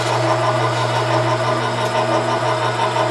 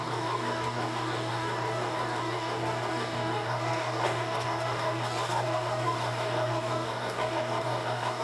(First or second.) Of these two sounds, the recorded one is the first